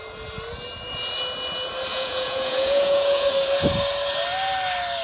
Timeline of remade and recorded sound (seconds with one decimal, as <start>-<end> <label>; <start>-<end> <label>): 0.0-1.9 recorded; 1.9-3.3 remade; 3.3-5.0 recorded